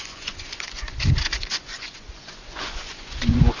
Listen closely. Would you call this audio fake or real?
fake